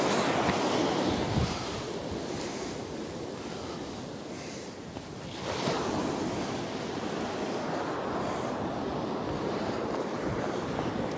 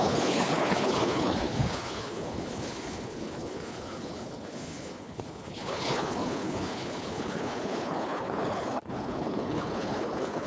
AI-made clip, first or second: second